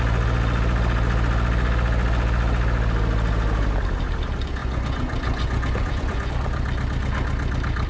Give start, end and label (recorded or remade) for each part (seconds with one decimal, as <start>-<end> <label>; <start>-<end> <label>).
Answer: 0.0-4.6 recorded; 4.6-6.3 remade; 6.3-7.9 recorded